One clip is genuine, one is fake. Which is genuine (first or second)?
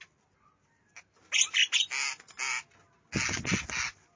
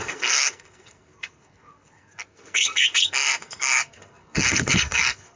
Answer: first